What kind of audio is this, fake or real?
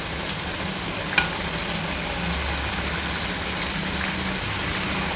real